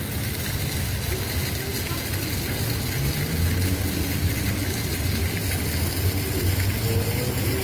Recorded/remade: recorded